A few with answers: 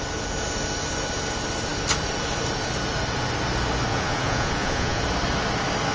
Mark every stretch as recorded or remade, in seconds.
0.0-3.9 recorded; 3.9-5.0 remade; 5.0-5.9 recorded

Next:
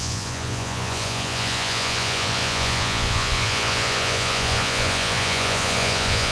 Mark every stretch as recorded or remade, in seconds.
0.0-6.3 remade

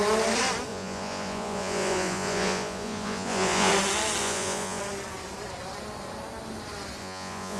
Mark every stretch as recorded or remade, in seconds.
0.0-0.7 recorded; 0.7-3.7 remade; 3.7-4.2 recorded; 4.2-4.8 remade; 4.8-7.0 recorded; 7.0-7.6 remade

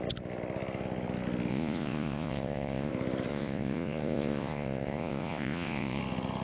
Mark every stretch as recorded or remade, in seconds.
0.0-1.5 recorded; 1.5-2.9 remade; 2.9-3.3 recorded; 3.3-6.0 remade; 6.0-6.4 recorded

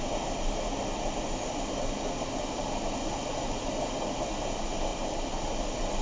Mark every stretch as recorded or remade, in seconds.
0.0-6.0 recorded